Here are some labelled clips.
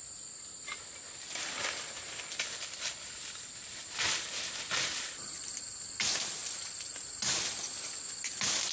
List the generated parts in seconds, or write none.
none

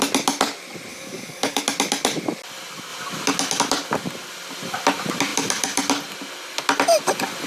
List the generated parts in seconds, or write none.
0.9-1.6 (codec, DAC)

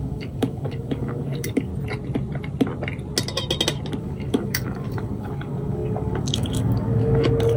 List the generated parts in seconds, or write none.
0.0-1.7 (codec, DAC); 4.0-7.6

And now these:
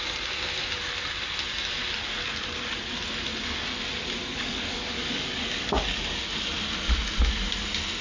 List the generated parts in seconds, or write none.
4.2-6.2 (codec, DAC)